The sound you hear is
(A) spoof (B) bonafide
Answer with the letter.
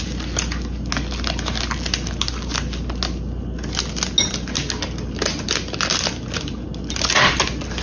B